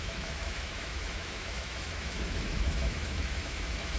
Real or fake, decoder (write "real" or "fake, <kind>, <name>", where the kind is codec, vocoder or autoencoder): fake, autoencoder, DAC-VAE